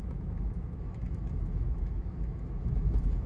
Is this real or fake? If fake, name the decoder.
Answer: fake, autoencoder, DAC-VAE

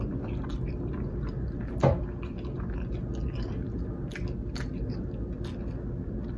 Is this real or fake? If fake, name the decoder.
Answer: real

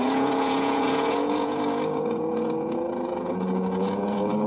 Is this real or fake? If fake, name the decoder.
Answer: fake, vocoder, Vocos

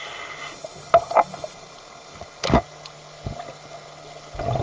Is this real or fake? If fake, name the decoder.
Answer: real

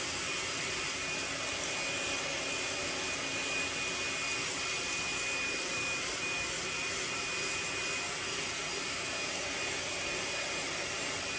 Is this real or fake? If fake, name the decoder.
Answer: real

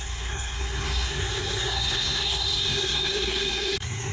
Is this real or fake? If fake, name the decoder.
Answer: fake, codec, SNAC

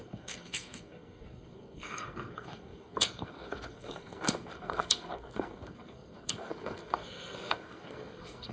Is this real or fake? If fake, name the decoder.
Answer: fake, codec, SNAC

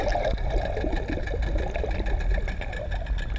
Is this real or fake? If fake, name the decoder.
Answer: real